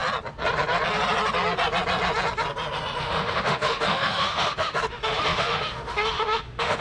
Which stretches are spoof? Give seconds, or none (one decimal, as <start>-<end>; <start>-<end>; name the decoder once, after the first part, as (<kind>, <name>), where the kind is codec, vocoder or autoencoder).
3.0-6.8 (autoencoder, DAC-VAE)